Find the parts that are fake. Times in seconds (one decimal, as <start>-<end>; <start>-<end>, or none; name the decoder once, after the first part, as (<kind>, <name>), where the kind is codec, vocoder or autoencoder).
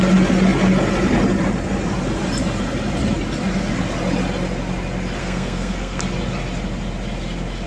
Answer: 5.2-6.0 (codec, SNAC)